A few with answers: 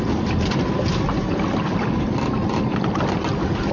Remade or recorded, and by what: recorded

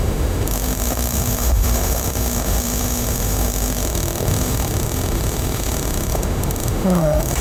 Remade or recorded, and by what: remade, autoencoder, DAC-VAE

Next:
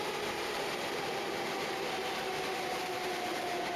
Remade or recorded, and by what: recorded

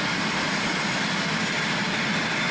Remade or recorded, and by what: recorded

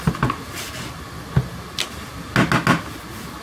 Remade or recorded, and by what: recorded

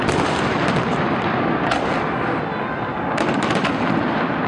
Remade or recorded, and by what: recorded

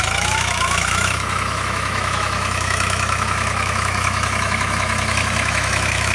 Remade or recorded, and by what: remade, autoencoder, DAC-VAE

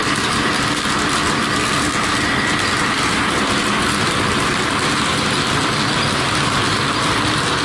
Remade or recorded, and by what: recorded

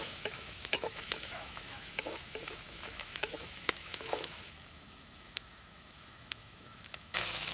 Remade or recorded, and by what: remade, autoencoder, DAC-VAE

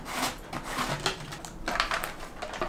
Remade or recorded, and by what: recorded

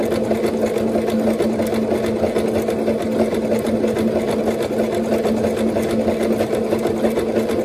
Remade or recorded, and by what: recorded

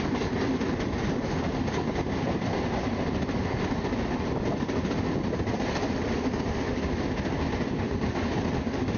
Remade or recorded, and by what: recorded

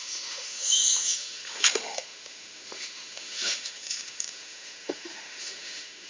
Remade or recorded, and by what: remade, autoencoder, DAC-VAE